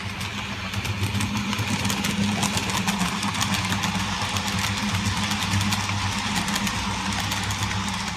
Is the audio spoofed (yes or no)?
no